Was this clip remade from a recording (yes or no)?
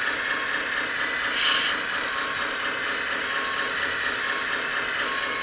no